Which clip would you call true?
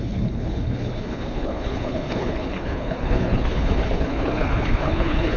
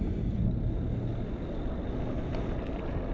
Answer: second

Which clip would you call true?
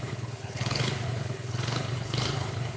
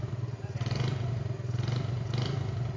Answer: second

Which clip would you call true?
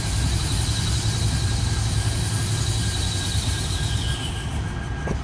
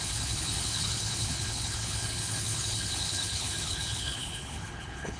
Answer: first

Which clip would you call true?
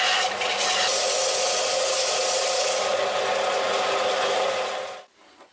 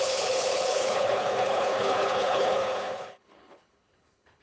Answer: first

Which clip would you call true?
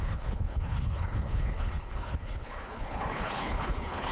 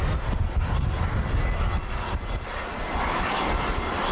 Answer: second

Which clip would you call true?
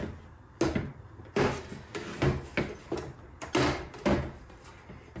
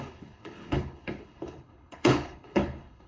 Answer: first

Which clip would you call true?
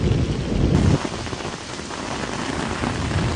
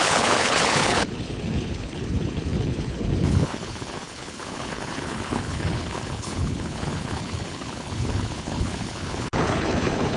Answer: first